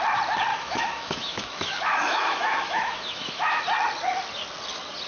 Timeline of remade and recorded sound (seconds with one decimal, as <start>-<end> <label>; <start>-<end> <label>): 0.0-0.5 recorded; 0.5-3.6 remade; 3.6-5.1 recorded